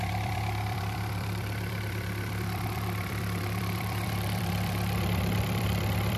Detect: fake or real fake